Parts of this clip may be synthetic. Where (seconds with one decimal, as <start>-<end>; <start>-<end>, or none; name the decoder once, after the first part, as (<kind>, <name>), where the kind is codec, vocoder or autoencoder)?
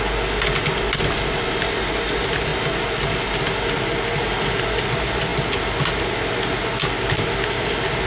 none